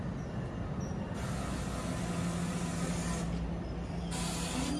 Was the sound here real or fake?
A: real